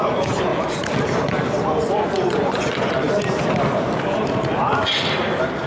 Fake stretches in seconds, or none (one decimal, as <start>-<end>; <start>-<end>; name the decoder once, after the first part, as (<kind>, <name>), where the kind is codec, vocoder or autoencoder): 0.0-0.5 (vocoder, Vocos); 1.8-3.0